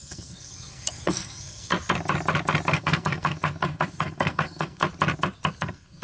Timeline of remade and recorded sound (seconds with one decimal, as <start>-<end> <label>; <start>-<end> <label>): 0.0-1.7 remade; 1.7-2.7 recorded; 2.7-4.8 remade; 4.8-5.6 recorded; 5.6-6.0 remade